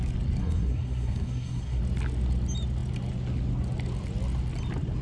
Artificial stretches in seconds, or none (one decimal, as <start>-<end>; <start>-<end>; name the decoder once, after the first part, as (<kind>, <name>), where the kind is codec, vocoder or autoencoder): 0.4-1.8 (codec, SNAC)